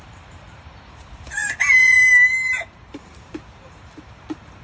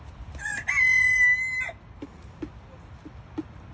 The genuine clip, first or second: second